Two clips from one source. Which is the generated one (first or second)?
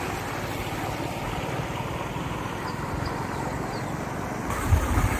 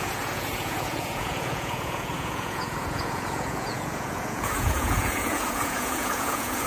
second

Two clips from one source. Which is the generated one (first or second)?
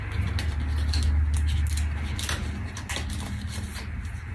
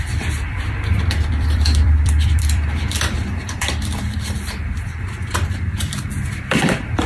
second